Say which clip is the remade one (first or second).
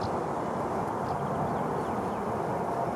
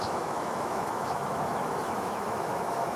second